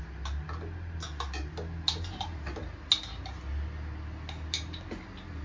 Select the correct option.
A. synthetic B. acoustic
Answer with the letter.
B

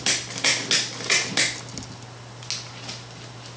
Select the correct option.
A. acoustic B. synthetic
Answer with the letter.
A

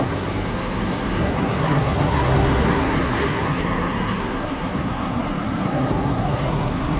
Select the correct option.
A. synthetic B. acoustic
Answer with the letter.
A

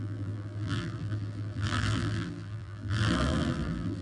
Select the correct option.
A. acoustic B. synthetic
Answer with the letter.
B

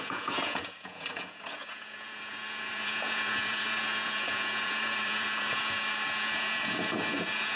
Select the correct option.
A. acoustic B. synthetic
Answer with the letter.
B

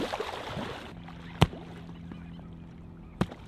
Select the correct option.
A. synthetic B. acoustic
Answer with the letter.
B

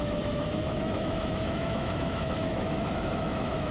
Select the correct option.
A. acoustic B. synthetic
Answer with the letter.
B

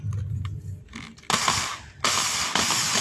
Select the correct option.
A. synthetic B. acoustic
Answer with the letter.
B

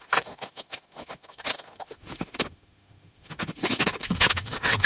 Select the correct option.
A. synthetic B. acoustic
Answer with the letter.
A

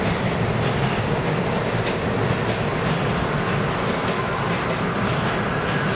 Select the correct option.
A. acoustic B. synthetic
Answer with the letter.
A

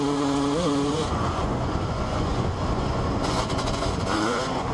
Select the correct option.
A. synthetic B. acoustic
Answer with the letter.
A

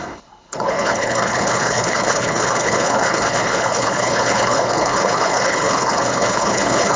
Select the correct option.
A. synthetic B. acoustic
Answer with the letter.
A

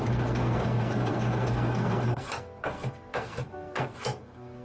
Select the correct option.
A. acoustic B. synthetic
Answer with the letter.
B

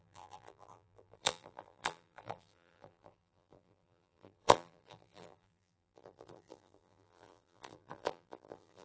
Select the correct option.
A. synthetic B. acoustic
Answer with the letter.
A